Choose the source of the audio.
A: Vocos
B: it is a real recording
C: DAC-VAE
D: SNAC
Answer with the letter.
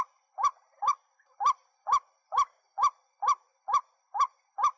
B